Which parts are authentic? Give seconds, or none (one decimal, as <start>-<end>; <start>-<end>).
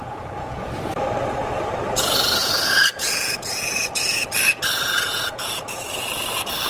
0.9-2.4; 6.1-6.7